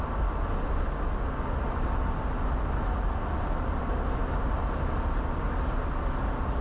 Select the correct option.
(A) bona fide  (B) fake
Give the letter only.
A